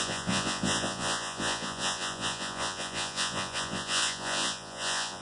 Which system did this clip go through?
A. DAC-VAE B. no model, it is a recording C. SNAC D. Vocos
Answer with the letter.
D